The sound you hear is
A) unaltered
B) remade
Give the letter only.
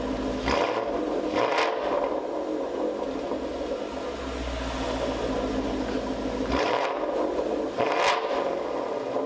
A